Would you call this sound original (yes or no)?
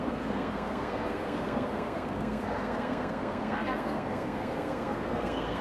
no